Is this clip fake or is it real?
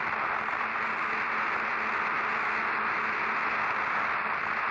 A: real